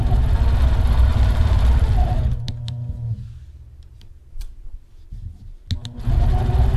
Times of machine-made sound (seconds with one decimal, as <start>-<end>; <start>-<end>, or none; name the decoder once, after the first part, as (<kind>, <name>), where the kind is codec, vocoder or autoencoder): 1.1-5.1 (vocoder, BigVGAN v2)